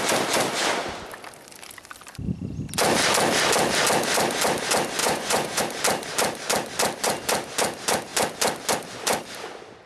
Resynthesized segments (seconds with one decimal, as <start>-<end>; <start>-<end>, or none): 5.0-5.6